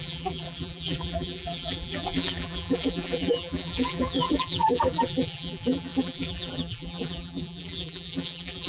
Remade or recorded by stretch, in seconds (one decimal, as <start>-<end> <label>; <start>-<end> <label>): 0.0-8.7 remade